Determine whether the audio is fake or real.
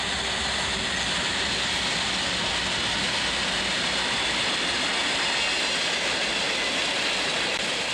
real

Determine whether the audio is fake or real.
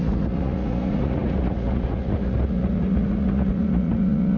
fake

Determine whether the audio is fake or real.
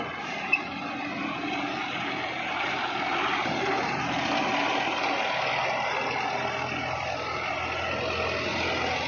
real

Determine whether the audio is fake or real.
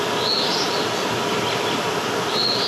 real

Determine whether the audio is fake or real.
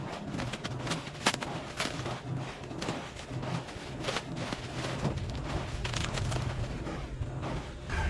real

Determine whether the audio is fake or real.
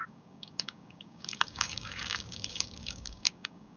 fake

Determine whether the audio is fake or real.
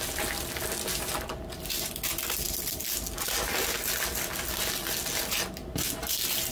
real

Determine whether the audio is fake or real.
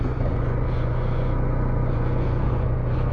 fake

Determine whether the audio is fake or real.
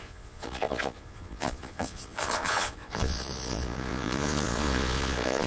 fake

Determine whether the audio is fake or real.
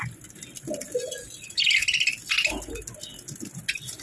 real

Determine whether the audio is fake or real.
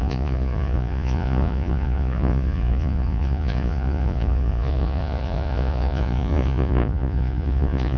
fake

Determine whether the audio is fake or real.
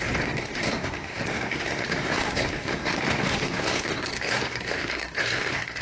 fake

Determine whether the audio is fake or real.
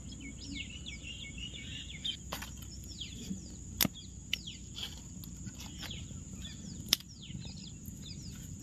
real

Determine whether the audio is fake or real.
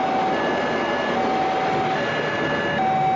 real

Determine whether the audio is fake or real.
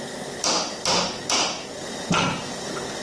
real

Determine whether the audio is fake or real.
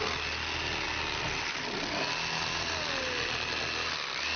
real